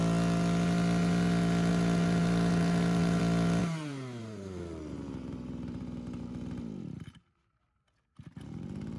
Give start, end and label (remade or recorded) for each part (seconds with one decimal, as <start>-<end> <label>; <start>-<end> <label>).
0.0-1.7 recorded; 1.7-3.2 remade; 3.2-3.6 recorded; 3.6-7.6 remade; 7.6-9.0 recorded